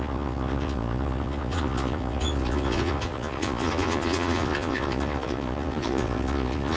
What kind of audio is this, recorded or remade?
remade